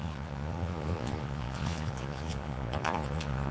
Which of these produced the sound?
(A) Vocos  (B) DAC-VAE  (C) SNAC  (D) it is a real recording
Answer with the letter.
A